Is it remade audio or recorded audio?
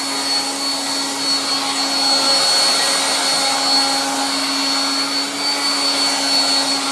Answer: recorded